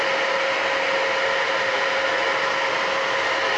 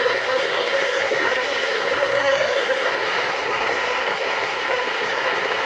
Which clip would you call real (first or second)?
first